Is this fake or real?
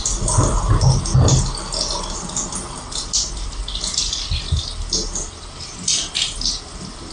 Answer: real